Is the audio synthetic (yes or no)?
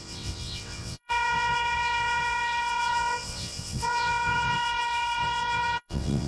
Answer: yes